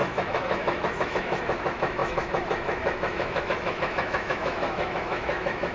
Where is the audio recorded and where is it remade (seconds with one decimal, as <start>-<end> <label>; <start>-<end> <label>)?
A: 0.0-5.7 remade